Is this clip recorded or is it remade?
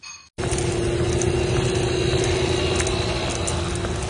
recorded